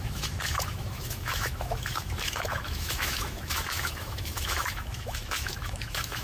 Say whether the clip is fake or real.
fake